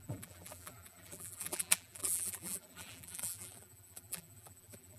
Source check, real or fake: fake